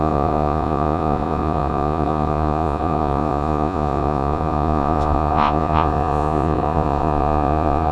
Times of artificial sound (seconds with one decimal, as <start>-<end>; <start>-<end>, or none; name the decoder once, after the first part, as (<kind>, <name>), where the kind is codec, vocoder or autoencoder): 0.0-7.9 (vocoder, Vocos)